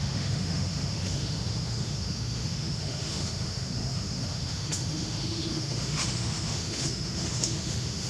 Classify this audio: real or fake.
fake